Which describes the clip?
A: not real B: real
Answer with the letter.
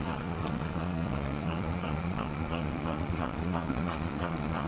A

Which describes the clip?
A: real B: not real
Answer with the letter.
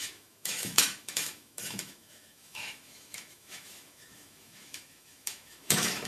B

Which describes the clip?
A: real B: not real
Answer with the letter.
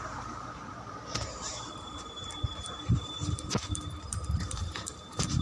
B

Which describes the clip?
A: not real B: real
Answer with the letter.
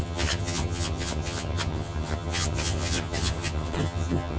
A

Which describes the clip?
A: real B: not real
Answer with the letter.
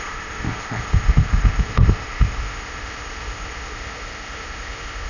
B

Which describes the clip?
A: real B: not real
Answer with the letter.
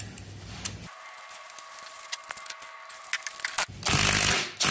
A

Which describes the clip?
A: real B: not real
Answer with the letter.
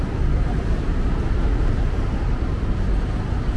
A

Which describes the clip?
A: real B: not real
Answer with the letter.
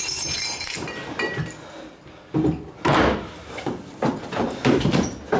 A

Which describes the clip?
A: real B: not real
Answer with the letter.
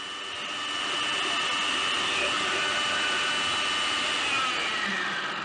A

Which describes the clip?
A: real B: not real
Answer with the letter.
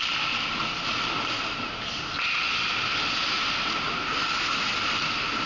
A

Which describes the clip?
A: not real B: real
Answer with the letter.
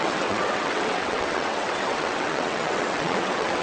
A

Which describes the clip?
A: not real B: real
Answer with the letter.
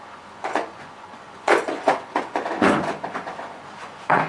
A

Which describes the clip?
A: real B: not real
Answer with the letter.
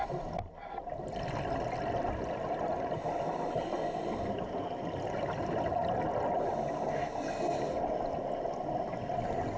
A